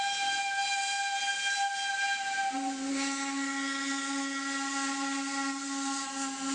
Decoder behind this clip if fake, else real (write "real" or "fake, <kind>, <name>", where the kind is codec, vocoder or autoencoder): real